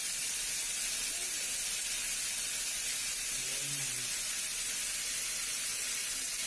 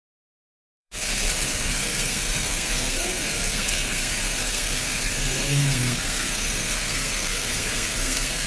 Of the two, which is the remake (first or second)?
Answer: second